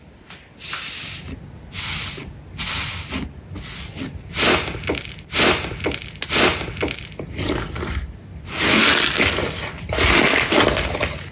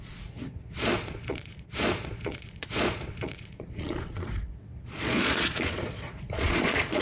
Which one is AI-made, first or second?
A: second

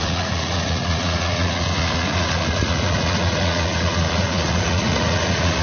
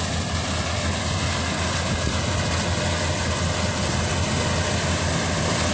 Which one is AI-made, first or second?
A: first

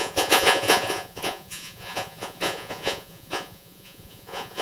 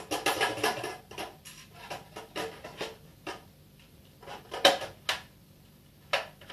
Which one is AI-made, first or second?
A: first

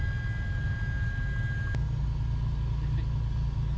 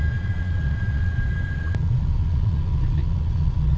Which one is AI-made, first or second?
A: second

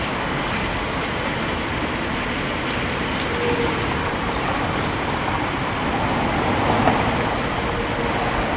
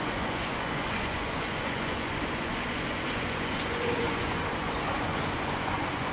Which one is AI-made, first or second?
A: second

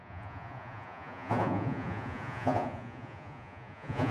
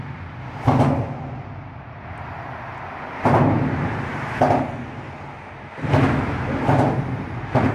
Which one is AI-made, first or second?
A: first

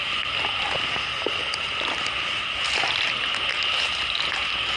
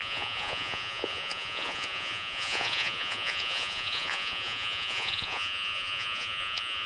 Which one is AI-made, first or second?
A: second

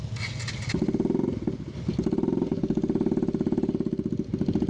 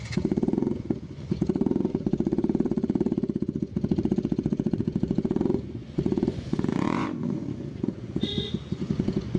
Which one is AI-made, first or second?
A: second